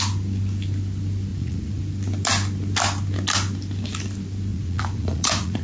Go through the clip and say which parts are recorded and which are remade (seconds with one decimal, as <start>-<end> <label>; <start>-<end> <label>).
0.0-1.3 recorded; 1.3-1.8 remade; 1.8-4.5 recorded; 4.5-5.6 remade